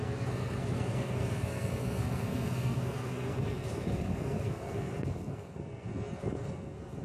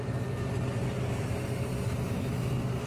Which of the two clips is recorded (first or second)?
second